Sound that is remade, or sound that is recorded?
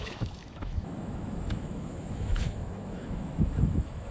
remade